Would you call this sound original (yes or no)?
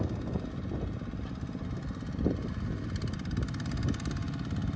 yes